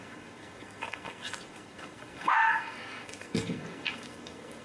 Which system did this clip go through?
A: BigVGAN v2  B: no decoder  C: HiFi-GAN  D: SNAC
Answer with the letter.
D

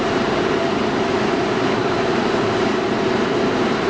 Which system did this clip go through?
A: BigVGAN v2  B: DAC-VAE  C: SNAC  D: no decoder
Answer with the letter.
A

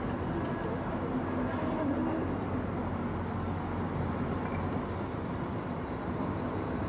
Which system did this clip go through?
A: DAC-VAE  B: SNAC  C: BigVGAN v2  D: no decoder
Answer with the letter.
D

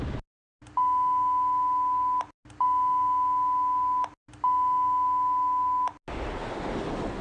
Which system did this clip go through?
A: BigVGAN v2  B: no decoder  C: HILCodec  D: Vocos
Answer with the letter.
B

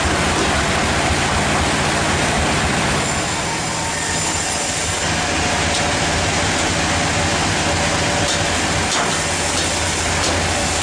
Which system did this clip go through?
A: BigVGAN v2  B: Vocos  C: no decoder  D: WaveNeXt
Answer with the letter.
C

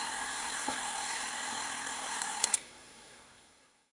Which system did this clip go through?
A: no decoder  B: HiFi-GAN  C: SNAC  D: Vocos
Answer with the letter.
C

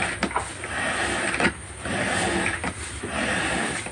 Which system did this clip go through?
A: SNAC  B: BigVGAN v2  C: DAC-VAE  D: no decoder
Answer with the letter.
D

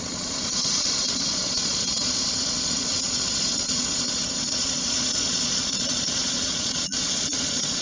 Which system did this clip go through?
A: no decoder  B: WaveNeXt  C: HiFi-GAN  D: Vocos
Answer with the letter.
D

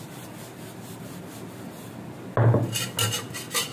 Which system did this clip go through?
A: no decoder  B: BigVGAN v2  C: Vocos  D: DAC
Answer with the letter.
A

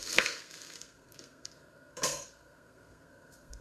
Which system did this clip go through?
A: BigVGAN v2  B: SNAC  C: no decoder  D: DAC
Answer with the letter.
B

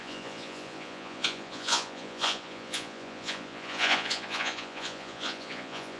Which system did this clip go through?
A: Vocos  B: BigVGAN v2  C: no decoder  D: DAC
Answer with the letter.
A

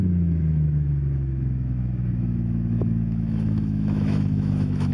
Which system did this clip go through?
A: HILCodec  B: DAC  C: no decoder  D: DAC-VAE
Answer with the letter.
D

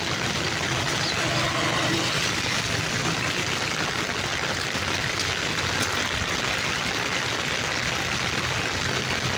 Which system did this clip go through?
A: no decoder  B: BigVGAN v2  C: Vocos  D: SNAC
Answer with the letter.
A